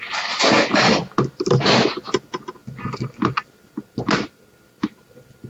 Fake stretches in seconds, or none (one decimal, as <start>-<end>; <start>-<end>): 2.6-3.6